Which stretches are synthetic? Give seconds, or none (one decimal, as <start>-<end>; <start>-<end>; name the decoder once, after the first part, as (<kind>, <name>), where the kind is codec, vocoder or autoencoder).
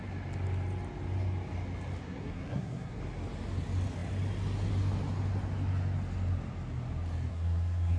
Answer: 2.0-3.0 (codec, SNAC); 7.3-8.0